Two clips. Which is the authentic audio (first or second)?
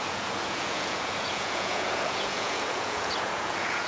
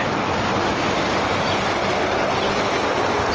second